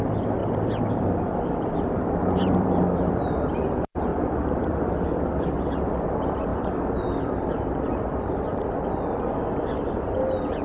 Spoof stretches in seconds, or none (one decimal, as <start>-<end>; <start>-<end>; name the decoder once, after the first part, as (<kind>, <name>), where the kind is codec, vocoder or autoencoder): 0.4-3.3 (vocoder, BigVGAN v2); 4.1-5.5; 6.5-8.5